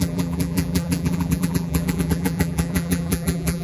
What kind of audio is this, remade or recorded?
remade